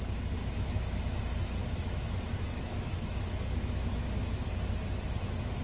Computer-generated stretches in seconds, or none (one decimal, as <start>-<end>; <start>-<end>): 0.4-1.2; 1.6-4.6